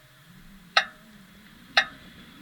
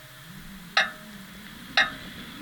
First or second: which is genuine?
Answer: second